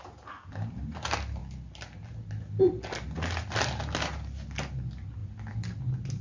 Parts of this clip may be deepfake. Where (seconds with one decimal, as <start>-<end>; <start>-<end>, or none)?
none